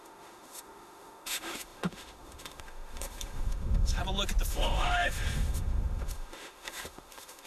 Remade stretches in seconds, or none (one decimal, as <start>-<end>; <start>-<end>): 0.0-4.0; 4.5-7.5